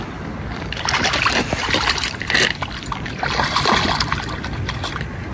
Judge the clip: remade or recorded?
recorded